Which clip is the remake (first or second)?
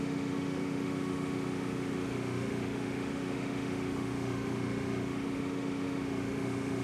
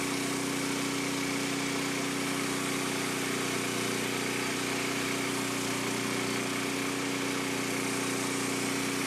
first